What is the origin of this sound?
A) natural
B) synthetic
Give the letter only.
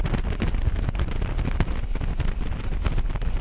A